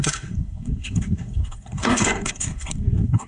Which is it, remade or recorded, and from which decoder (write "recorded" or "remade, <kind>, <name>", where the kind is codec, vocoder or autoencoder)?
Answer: remade, codec, SNAC